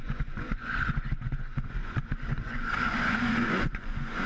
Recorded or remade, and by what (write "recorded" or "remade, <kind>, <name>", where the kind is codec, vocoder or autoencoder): remade, vocoder, Vocos